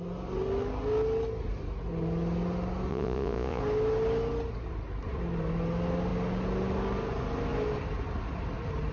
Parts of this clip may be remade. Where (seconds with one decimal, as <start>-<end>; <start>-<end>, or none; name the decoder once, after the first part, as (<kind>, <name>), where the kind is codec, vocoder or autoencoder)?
2.9-3.6 (vocoder, Vocos)